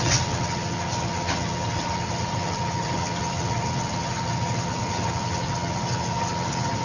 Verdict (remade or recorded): remade